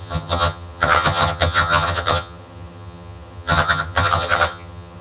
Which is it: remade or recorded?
remade